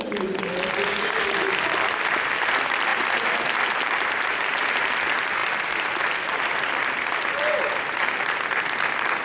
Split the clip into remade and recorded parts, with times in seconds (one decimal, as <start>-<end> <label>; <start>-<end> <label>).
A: 0.0-2.9 recorded; 2.9-4.1 remade; 4.1-9.2 recorded

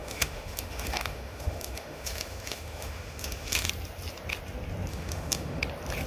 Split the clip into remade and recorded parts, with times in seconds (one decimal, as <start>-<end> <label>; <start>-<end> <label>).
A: 0.0-3.7 remade; 3.7-4.9 recorded; 4.9-5.6 remade; 5.6-6.1 recorded

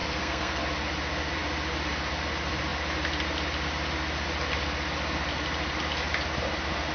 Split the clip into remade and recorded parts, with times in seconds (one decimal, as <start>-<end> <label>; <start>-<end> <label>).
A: 0.0-0.6 remade; 0.6-6.9 recorded

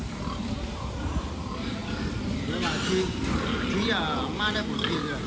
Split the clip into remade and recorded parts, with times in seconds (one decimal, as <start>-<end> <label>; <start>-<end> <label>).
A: 0.0-5.3 recorded

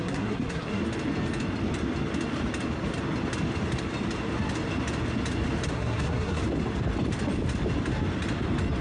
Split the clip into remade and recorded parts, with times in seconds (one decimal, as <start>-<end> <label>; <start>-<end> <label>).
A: 0.0-0.8 remade; 0.8-5.7 recorded; 5.7-6.4 remade; 6.4-8.8 recorded